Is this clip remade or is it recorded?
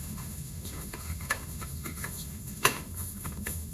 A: remade